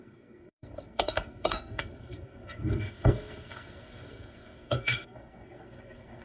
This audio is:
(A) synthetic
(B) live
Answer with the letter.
A